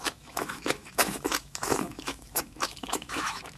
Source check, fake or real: fake